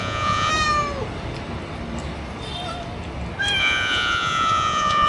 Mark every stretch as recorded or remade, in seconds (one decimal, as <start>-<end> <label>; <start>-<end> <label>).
0.0-0.5 remade; 0.5-3.6 recorded; 3.6-5.1 remade